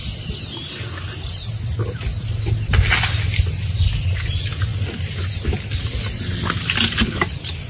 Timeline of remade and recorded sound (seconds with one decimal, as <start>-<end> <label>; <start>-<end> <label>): 0.0-7.7 recorded